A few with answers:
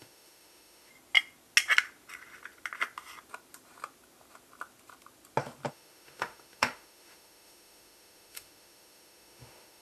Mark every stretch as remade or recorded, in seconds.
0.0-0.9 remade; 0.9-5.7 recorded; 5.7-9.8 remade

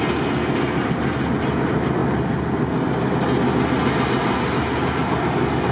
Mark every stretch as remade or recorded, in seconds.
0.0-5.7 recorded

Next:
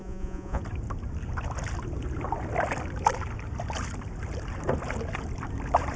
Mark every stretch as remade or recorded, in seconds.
0.0-0.6 remade; 0.6-6.0 recorded

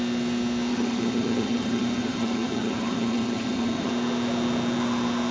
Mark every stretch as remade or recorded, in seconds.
0.0-0.7 recorded; 0.7-3.9 remade; 3.9-5.3 recorded

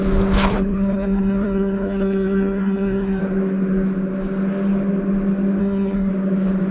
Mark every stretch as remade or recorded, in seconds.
0.0-0.5 recorded; 0.5-3.2 remade; 3.2-5.6 recorded; 5.6-6.1 remade; 6.1-6.7 recorded

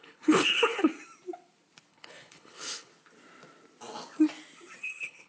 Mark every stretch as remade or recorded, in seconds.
0.0-0.9 remade; 0.9-1.9 recorded; 1.9-2.9 remade; 2.9-4.8 recorded; 4.8-5.3 remade

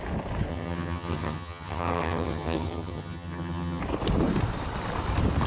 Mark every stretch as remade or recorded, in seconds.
0.0-0.5 recorded; 0.5-3.8 remade; 3.8-5.5 recorded

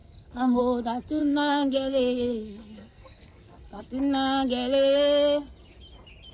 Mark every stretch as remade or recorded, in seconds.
0.0-0.6 remade; 0.6-1.2 recorded; 1.2-3.8 remade; 3.8-6.3 recorded